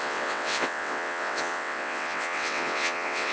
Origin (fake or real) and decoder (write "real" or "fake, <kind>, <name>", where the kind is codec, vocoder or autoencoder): fake, vocoder, WaveNeXt